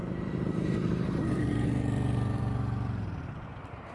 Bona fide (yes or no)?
no